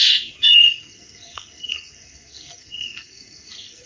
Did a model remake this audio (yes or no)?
yes